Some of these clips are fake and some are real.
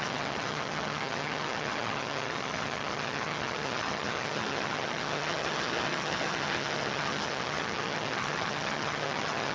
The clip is fake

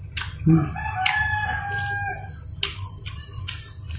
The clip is real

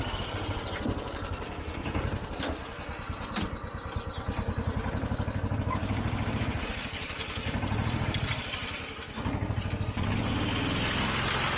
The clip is real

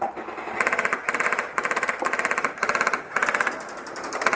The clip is real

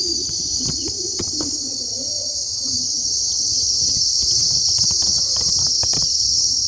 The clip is fake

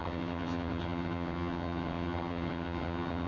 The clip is fake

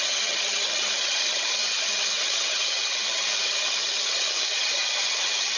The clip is fake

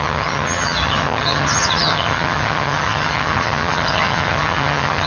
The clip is fake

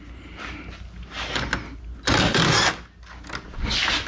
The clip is real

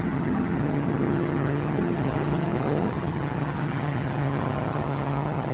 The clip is fake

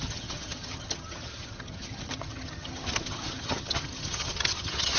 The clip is fake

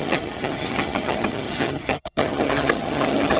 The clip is fake